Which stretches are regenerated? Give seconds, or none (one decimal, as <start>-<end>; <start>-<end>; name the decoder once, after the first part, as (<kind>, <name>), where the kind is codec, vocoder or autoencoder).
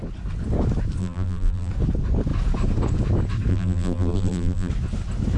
1.0-1.7 (vocoder, BigVGAN v2); 3.5-4.7